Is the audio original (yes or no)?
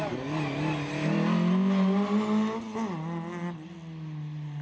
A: yes